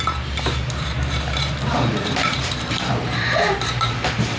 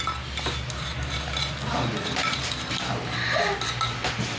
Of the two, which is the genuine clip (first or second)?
second